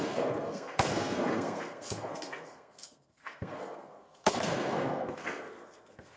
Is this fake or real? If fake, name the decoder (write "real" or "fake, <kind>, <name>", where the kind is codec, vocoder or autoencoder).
fake, codec, SNAC